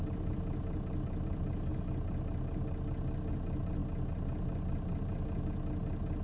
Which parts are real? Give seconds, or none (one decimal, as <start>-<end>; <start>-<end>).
0.0-6.2